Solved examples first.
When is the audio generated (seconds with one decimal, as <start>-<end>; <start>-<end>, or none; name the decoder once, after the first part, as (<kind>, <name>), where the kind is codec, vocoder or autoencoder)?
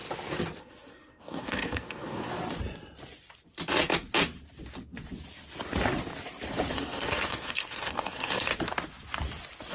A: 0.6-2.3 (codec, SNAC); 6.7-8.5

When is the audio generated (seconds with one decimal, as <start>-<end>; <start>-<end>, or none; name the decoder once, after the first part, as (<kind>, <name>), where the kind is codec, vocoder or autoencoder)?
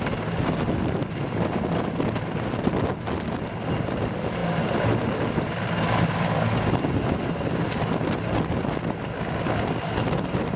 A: none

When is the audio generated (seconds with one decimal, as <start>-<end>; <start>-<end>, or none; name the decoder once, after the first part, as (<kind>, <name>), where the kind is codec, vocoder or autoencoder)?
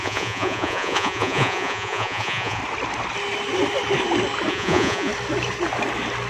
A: 0.0-2.6 (vocoder, Vocos); 4.5-5.1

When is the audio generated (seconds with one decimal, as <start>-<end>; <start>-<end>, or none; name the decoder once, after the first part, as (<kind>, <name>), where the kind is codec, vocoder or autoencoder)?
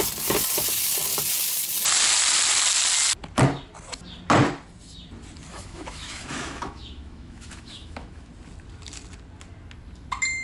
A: 5.5-8.3 (autoencoder, DAC-VAE)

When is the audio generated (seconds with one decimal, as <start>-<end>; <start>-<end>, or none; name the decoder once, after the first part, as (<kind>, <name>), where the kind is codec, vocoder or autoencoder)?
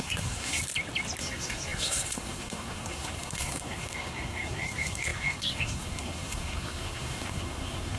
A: 0.0-0.6 (codec, SNAC); 1.2-8.0